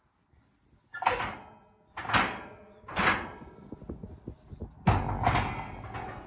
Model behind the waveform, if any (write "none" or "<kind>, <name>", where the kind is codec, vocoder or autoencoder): none